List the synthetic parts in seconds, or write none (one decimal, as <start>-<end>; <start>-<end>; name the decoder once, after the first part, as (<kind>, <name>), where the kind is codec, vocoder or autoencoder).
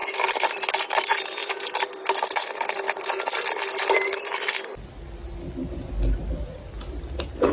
none